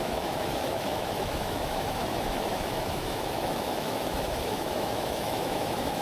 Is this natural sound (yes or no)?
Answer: no